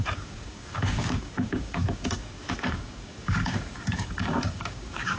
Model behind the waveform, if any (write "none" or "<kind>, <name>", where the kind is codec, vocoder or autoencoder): codec, DAC